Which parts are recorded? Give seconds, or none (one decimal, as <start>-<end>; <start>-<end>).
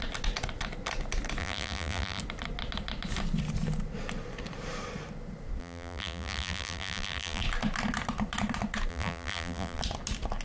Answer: 0.0-1.4; 2.2-5.6; 7.4-8.9; 9.8-10.4